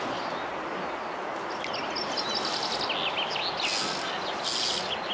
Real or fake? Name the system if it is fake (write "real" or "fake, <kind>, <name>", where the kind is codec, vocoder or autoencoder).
real